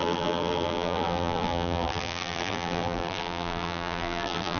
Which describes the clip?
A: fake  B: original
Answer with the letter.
A